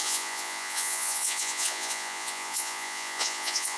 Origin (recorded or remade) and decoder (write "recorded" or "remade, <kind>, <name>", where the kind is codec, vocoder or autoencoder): remade, vocoder, Vocos